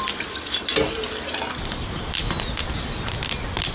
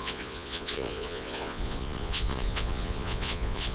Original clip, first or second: first